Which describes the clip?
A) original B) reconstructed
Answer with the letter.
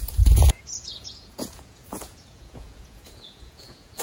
B